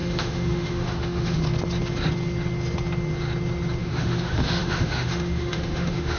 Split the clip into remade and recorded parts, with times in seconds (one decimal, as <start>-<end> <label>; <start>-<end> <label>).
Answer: 0.0-1.4 remade; 1.4-3.8 recorded; 3.8-6.2 remade